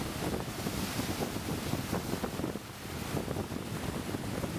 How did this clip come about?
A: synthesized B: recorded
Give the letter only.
B